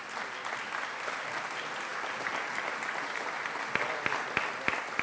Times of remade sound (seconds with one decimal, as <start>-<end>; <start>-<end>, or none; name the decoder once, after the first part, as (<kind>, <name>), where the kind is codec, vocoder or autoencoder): none